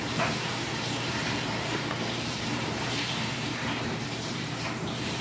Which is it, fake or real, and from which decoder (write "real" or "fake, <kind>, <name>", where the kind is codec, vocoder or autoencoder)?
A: fake, vocoder, BigVGAN v2